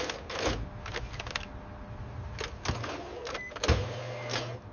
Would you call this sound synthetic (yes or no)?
no